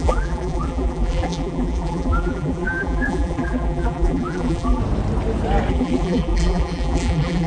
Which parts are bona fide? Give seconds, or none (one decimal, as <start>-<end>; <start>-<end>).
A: 4.8-5.7